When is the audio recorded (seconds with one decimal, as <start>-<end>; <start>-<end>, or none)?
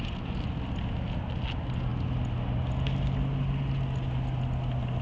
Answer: 0.0-5.0